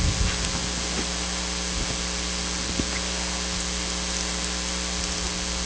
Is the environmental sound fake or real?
real